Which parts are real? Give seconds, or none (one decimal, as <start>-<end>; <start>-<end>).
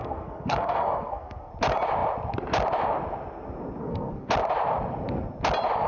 1.5-3.8; 4.3-5.9